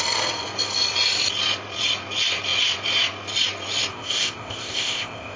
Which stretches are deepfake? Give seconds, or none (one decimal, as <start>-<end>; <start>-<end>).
3.9-5.4